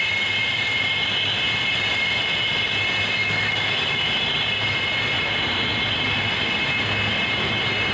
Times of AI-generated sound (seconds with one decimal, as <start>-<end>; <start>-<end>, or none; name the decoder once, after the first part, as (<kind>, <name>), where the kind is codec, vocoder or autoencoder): 3.2-4.1 (autoencoder, DAC-VAE)